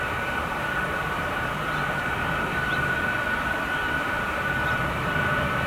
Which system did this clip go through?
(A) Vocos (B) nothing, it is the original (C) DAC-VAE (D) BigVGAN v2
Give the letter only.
D